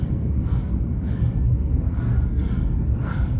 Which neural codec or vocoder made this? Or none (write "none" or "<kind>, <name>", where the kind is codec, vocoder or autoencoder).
codec, SNAC